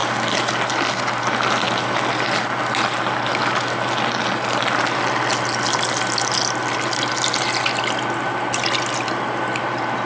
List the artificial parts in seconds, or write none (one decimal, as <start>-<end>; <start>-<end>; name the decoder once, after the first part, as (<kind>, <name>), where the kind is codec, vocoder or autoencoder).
none